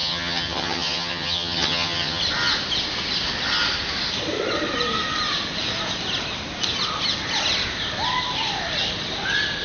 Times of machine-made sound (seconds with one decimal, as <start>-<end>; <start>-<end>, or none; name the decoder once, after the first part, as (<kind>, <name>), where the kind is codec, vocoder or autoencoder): 0.0-2.2 (vocoder, HiFi-GAN)